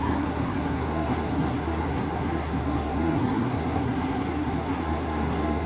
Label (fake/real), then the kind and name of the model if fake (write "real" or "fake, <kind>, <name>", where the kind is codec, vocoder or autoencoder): fake, codec, SNAC